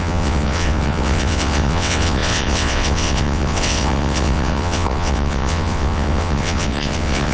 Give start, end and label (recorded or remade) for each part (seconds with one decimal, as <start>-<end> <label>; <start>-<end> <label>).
0.0-7.3 remade